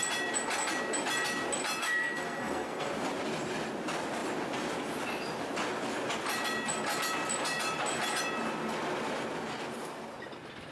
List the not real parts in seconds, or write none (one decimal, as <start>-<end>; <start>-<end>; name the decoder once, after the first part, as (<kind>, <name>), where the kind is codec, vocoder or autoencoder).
1.8-2.9 (codec, SNAC)